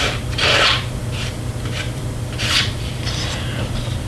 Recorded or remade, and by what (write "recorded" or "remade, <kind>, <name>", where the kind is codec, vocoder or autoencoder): remade, vocoder, BigVGAN v2